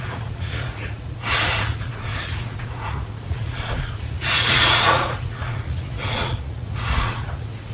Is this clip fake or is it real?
fake